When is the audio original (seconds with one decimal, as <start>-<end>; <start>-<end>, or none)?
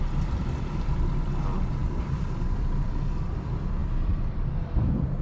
none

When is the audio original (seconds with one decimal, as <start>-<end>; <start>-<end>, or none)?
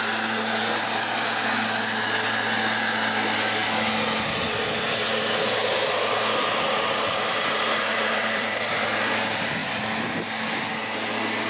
0.0-5.6; 8.6-9.6; 10.3-11.5